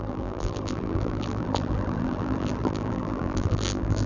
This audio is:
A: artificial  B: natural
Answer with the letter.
A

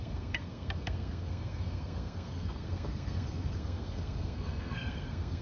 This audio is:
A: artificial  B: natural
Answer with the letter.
A